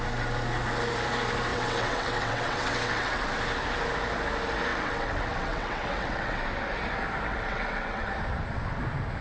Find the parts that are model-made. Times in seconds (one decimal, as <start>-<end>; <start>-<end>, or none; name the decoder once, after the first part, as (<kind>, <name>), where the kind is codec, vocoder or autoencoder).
1.5-3.3 (vocoder, WaveNeXt); 4.7-6.4; 7.3-8.1